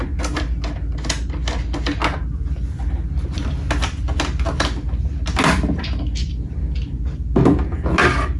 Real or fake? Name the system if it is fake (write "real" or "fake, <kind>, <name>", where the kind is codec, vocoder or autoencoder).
real